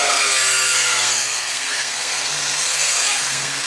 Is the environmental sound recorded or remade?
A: remade